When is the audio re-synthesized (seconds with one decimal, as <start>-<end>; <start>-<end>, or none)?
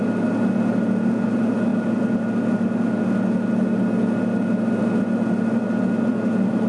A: none